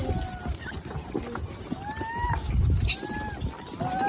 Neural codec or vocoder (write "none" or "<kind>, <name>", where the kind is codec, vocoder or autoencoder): none